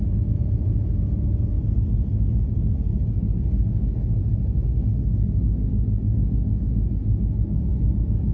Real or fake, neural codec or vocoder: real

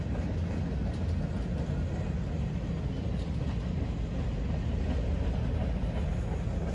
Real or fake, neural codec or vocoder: real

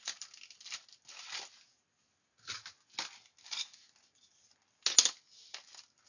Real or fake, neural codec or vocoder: real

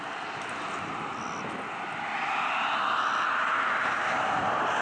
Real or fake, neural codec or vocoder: real